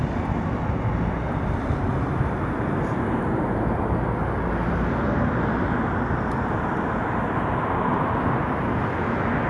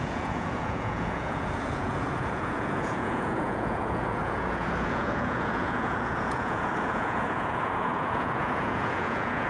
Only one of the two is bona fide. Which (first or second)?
first